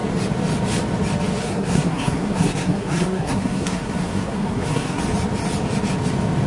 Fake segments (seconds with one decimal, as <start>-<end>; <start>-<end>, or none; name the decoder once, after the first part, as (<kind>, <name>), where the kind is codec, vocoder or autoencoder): 1.4-5.0 (codec, SNAC)

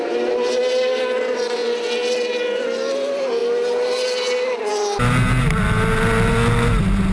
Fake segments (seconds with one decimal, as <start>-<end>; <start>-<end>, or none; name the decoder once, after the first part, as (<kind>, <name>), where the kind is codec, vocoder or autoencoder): none

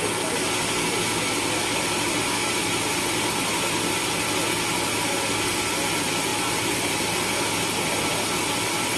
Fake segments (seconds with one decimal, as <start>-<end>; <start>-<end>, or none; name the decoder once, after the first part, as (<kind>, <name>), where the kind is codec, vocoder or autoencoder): 6.3-7.2 (vocoder, BigVGAN v2)

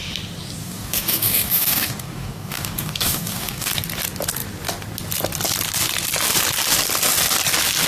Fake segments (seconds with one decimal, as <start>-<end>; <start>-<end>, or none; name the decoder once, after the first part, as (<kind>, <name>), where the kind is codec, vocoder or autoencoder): 0.6-3.7 (codec, DAC)